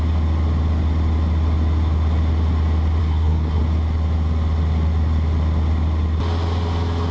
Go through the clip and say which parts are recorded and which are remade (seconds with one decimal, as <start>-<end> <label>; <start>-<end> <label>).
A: 0.0-3.0 recorded; 3.0-3.6 remade; 3.6-7.1 recorded